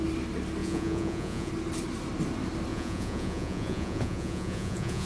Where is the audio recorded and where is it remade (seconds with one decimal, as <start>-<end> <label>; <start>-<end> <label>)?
0.0-0.6 recorded; 0.6-1.5 remade; 1.5-2.7 recorded; 2.7-5.1 remade